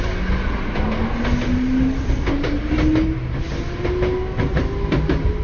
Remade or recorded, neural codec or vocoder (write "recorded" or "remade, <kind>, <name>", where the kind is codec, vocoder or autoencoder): recorded